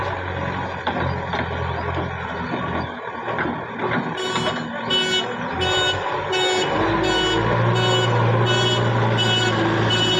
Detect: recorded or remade recorded